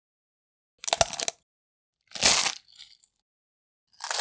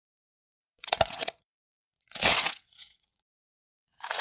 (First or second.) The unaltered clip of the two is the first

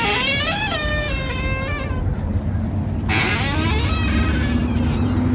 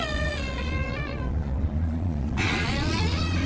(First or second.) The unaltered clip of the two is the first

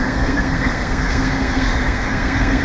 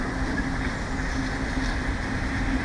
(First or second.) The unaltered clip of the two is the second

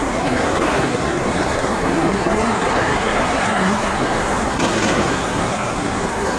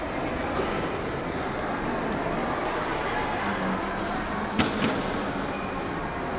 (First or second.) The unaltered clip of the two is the second